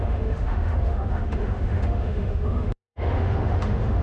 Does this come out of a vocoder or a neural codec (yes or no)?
yes